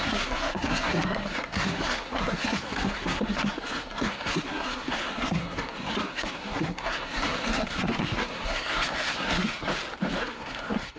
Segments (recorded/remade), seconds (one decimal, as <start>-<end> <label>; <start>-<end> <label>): 0.0-9.7 remade; 9.7-10.2 recorded; 10.2-11.0 remade